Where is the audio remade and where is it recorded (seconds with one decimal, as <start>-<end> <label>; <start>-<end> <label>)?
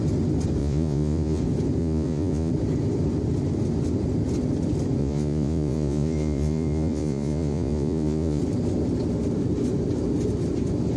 0.0-0.6 recorded; 0.6-1.4 remade; 1.4-1.8 recorded; 1.8-2.5 remade; 2.5-5.0 recorded; 5.0-8.4 remade; 8.4-11.0 recorded